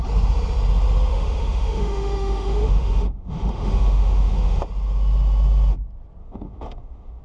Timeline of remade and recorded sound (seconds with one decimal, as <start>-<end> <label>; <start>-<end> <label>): 0.0-1.1 recorded; 1.1-4.6 remade; 4.6-6.2 recorded; 6.2-7.2 remade